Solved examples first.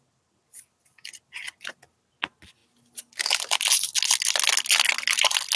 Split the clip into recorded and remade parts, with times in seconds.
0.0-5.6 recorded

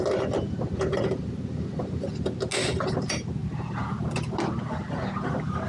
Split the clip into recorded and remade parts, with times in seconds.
0.0-5.7 recorded

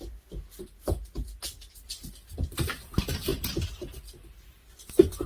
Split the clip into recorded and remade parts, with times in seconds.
0.0-5.3 recorded

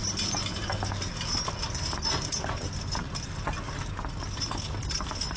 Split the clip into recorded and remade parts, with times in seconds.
0.0-5.4 recorded

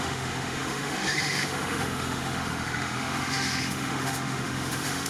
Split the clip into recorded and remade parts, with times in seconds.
0.0-5.1 remade

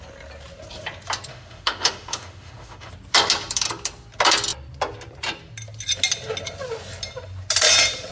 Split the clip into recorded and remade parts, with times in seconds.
0.0-1.3 recorded; 1.3-2.9 remade; 2.9-8.1 recorded